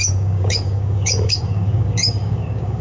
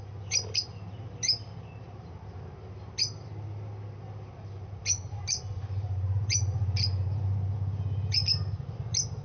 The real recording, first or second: second